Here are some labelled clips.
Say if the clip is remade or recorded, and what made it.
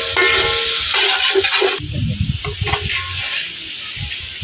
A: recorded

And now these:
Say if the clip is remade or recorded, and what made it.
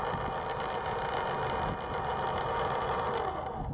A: recorded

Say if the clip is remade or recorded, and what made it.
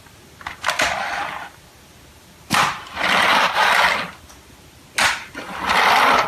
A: recorded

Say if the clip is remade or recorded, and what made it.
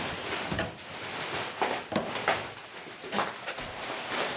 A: recorded